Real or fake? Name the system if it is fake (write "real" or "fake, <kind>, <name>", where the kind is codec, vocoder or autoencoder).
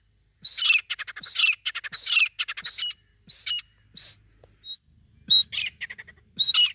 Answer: real